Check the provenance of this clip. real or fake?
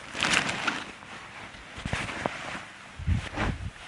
real